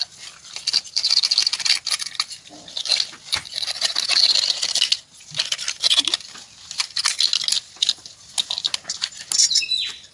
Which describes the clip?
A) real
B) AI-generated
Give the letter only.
A